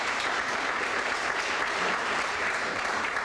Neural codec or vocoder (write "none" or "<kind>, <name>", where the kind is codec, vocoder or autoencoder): vocoder, BigVGAN v2